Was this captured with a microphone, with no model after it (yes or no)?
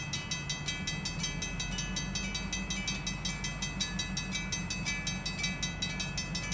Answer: yes